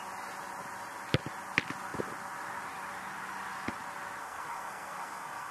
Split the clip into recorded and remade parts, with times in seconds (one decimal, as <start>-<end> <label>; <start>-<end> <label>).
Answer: 0.0-4.2 recorded; 4.2-5.5 remade